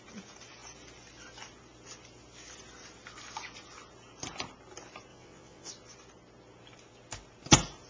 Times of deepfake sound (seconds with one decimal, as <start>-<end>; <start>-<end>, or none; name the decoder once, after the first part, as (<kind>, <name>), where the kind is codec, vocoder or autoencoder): 5.1-5.7 (vocoder, WaveNeXt)